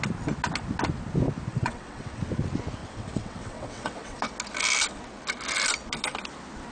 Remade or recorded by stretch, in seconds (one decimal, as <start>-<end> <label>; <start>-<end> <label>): 0.0-1.5 recorded; 1.5-2.2 remade; 2.2-2.8 recorded; 2.8-4.2 remade; 4.2-6.7 recorded

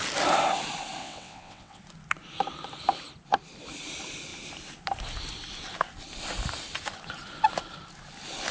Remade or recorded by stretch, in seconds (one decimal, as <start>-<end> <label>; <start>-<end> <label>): 0.0-1.0 recorded; 1.0-1.8 remade; 1.8-8.5 recorded

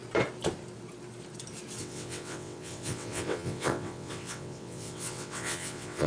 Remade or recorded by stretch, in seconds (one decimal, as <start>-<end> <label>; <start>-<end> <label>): 0.0-1.8 recorded; 1.8-6.1 remade

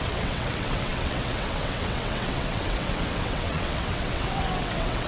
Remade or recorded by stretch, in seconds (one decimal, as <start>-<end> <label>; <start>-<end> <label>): 0.0-5.1 remade

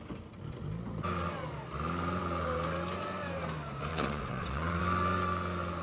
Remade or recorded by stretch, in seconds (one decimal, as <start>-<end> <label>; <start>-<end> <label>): 0.0-3.9 recorded; 3.9-4.8 remade; 4.8-5.8 recorded

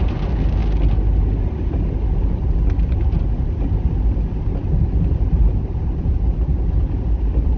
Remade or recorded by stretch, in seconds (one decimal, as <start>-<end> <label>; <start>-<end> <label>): 0.0-7.6 recorded

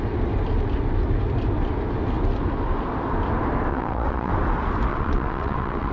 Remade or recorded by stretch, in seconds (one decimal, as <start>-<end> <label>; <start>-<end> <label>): 0.0-3.7 recorded; 3.7-4.3 remade; 4.3-4.9 recorded; 4.9-5.9 remade

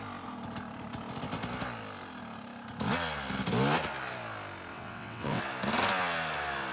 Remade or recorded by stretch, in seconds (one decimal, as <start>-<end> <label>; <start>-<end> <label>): 0.0-4.7 recorded; 4.7-5.4 remade; 5.4-6.7 recorded